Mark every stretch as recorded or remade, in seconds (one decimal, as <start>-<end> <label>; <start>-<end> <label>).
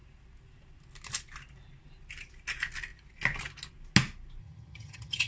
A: 0.0-4.4 recorded; 4.4-5.3 remade